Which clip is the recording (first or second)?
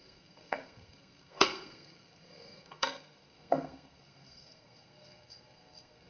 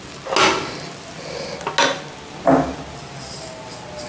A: second